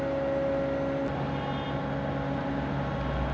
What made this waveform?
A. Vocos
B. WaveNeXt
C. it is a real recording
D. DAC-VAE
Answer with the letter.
C